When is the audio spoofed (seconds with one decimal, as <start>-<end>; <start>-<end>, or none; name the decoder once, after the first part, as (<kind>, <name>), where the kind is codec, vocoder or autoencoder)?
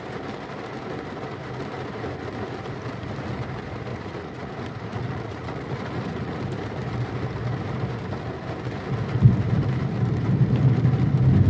3.9-4.5 (vocoder, Vocos); 4.9-6.4